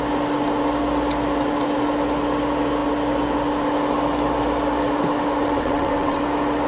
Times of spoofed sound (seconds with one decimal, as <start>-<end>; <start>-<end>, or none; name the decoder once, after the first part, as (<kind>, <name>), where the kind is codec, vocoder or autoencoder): 5.4-6.2 (vocoder, WaveNeXt)